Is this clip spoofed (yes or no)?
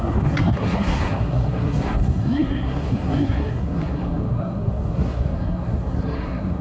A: yes